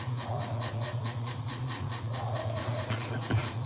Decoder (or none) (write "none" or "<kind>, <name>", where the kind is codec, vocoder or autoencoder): vocoder, Vocos